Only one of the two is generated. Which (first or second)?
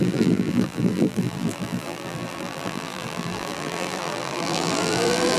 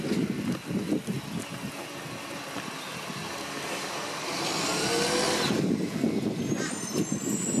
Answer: first